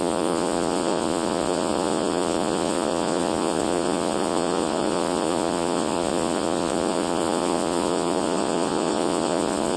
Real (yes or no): no